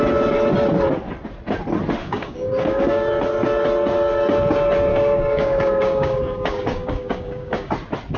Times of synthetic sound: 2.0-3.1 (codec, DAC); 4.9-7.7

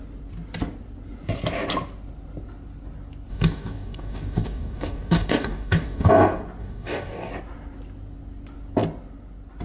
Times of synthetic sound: 3.3-6.1 (codec, DAC); 6.6-7.3

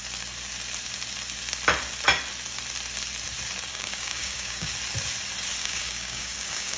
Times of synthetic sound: 3.7-4.7 (codec, DAC); 5.6-6.8

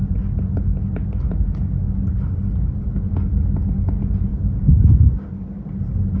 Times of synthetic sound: 4.3-5.3 (codec, DAC)

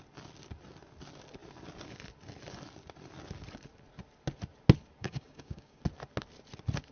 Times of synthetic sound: 5.0-5.8 (codec, DAC)

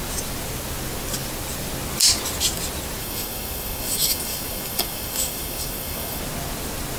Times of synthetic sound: 3.0-6.2 (codec, DAC)

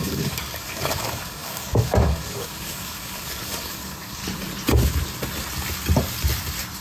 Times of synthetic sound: 0.0-4.2 (codec, DAC)